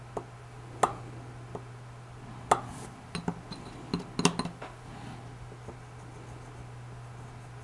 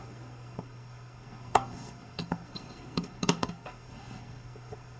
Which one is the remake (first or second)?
second